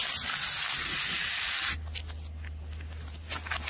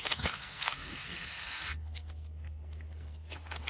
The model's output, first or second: second